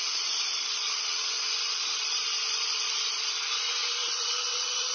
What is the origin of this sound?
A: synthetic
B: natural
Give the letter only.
A